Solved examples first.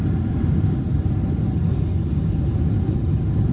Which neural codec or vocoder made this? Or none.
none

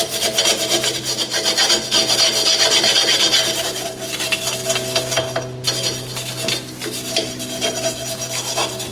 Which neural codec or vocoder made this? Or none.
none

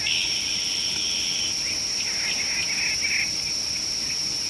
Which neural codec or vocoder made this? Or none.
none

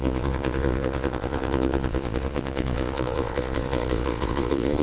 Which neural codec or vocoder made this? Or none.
vocoder, Vocos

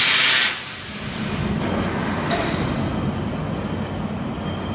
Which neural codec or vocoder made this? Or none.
none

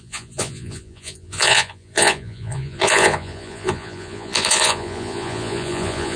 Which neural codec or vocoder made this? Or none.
vocoder, Vocos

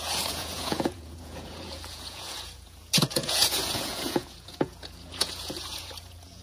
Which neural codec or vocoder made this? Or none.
vocoder, Vocos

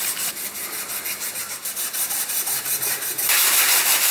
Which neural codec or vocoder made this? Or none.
none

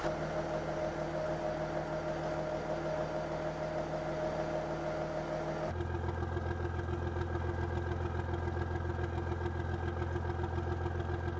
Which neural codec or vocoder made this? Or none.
none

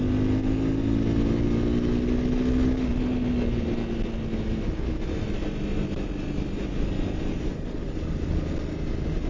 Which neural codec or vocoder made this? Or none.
none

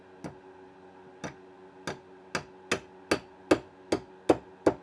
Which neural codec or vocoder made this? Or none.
none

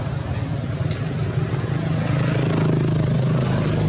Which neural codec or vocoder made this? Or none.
none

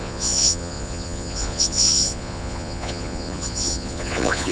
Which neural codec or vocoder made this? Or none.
vocoder, Vocos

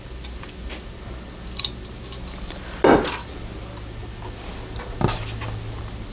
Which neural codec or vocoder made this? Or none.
none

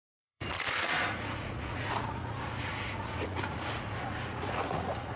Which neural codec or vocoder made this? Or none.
vocoder, Vocos